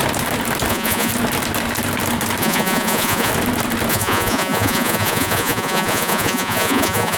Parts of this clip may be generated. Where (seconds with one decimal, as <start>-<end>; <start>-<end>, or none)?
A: 0.7-1.1; 2.4-3.3; 3.9-7.2